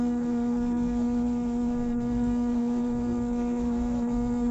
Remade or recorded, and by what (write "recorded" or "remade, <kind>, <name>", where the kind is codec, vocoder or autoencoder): remade, codec, SNAC